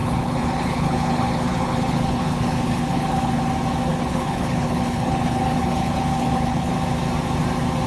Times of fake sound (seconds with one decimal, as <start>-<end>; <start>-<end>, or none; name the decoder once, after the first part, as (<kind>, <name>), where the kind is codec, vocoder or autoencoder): 0.0-3.4 (codec, HILCodec); 3.9-6.7